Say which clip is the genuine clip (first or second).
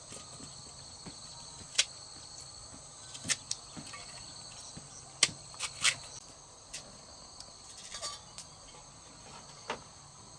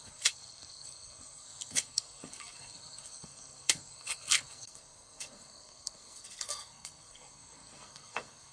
first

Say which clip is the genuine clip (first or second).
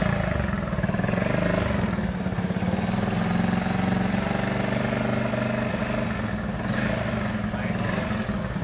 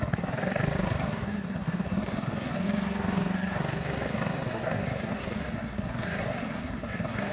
first